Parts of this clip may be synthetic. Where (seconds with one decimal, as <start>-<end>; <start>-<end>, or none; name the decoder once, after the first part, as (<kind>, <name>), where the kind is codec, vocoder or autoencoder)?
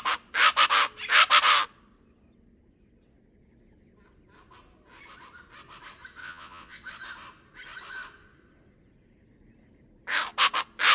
6.2-6.8 (vocoder, Vocos)